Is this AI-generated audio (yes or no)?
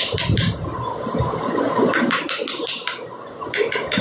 no